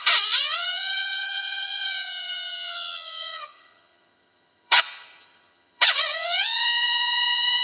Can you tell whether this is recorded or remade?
remade